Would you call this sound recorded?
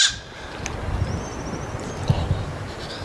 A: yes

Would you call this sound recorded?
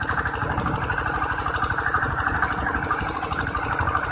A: no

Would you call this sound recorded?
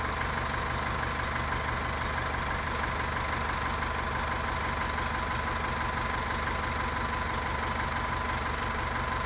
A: yes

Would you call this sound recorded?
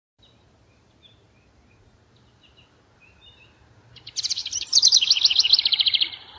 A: no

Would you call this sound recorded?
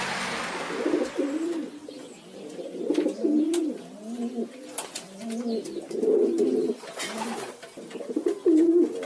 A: yes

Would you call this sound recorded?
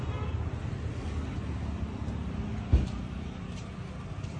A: yes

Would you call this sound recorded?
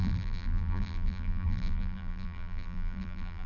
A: no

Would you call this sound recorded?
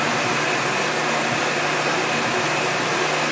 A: yes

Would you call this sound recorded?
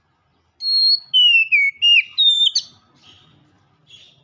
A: yes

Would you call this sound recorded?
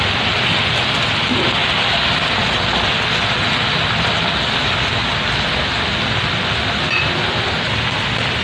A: yes